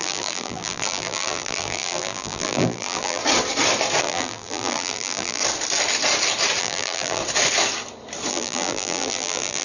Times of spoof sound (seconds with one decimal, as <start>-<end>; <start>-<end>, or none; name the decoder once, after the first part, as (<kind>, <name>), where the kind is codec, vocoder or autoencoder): 0.0-3.2 (vocoder, BigVGAN v2); 4.0-5.4; 6.6-7.2; 8.3-9.6